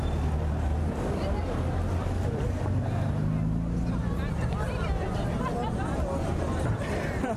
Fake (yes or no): no